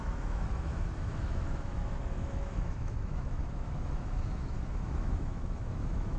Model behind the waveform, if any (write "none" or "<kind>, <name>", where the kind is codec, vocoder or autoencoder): autoencoder, DAC-VAE